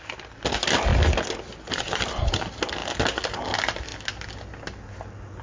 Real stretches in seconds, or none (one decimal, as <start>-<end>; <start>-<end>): 0.0-5.4